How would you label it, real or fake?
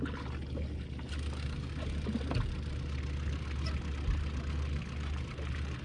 real